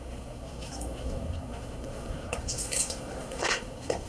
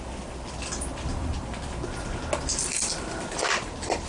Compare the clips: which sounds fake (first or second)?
first